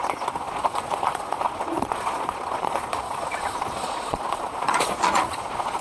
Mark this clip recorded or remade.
remade